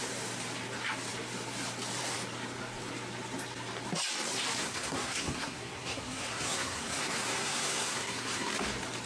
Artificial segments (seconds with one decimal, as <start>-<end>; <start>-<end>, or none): 4.6-8.5